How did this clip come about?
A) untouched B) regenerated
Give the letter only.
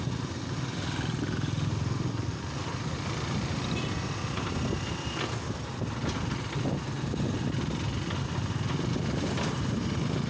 A